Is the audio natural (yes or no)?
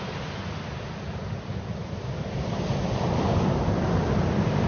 yes